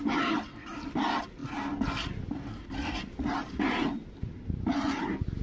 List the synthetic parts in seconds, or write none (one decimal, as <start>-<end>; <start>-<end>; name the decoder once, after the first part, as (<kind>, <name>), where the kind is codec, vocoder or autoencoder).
none